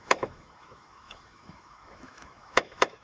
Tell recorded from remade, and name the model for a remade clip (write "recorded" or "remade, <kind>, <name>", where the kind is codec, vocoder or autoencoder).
remade, autoencoder, DAC-VAE